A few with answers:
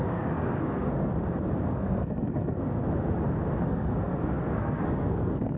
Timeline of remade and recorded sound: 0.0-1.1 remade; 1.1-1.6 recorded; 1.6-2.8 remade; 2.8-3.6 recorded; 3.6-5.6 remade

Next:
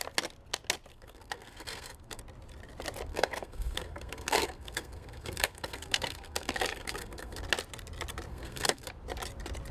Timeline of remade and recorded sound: 0.0-0.9 recorded; 0.9-2.2 remade; 2.2-3.1 recorded; 3.1-7.4 remade; 7.4-8.3 recorded; 8.3-8.9 remade; 8.9-9.7 recorded

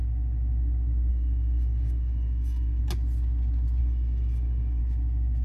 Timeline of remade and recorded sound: 0.0-1.1 recorded; 1.1-2.8 remade; 2.8-3.8 recorded; 3.8-4.8 remade; 4.8-5.4 recorded

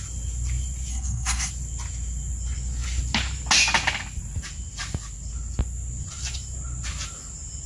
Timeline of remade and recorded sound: 0.0-0.9 recorded; 0.9-1.5 remade; 1.5-7.7 recorded

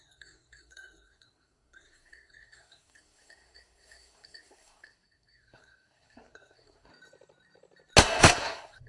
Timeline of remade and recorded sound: 0.0-6.9 remade; 6.9-8.0 recorded; 8.0-8.9 remade